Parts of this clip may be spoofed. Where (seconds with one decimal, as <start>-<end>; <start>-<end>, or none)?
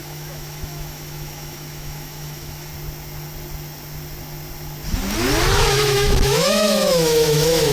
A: 0.0-2.7; 5.7-7.7